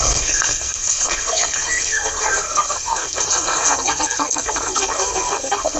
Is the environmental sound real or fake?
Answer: fake